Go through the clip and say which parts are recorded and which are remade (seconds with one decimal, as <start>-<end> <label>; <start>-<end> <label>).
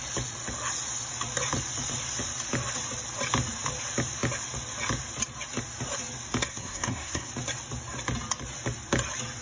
0.0-6.5 recorded; 6.5-7.3 remade; 7.3-9.4 recorded